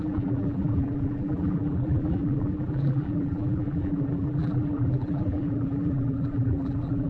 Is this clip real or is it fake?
fake